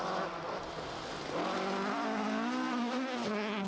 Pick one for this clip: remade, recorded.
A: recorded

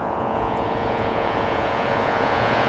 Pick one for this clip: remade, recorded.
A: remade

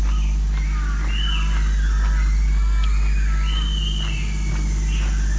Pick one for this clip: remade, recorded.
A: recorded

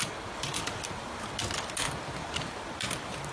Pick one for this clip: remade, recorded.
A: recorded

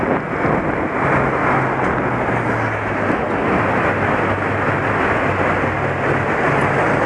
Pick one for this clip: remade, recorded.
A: recorded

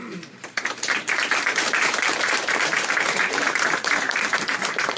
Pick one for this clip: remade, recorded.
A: remade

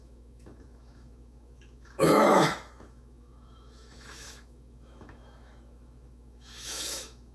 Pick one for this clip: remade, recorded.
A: remade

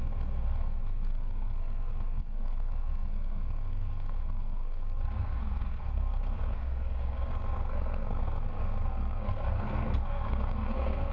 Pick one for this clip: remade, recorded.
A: remade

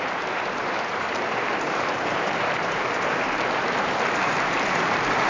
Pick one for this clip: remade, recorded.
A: remade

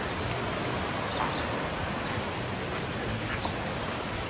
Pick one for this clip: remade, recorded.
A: recorded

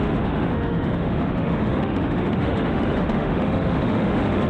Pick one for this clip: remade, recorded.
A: remade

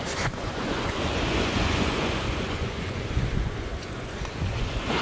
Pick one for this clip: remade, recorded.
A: remade